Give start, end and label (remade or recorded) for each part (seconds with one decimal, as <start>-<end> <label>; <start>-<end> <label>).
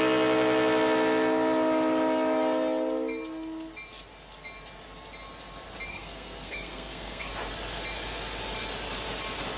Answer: 0.0-5.9 recorded; 5.9-7.3 remade; 7.3-9.6 recorded